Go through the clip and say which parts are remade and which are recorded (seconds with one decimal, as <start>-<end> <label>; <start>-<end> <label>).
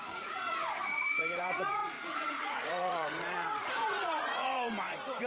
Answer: 0.0-5.3 remade